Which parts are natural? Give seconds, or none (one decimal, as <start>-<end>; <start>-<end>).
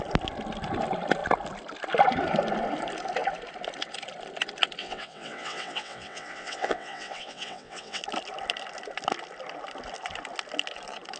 0.0-4.8; 8.0-11.2